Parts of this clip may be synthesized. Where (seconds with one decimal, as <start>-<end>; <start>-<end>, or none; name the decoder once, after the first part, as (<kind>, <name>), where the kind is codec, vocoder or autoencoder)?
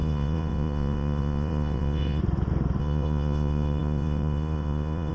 0.0-2.2 (vocoder, Vocos); 2.8-5.1